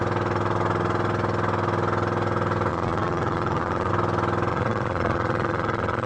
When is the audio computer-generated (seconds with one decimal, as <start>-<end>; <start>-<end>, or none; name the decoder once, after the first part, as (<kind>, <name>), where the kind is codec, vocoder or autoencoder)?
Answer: 2.7-3.9 (vocoder, Vocos); 4.5-6.1